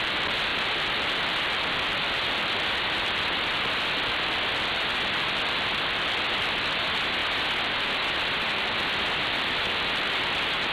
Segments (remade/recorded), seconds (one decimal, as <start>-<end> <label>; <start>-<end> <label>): 0.0-10.7 recorded